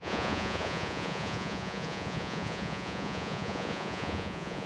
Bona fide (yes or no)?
no